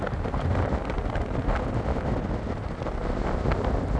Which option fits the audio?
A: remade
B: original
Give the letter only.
B